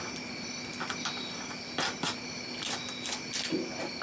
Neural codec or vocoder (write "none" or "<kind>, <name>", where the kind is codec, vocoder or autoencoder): none